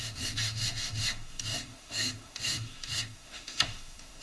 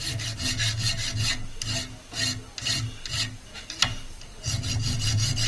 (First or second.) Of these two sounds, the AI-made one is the first